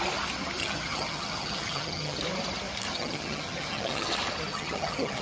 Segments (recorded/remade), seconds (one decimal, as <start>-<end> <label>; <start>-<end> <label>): 0.0-0.6 recorded; 0.6-2.2 remade; 2.2-2.9 recorded; 2.9-4.1 remade; 4.1-4.5 recorded; 4.5-5.2 remade